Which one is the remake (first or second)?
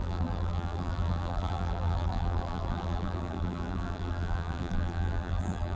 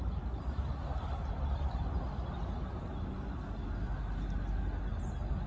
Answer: first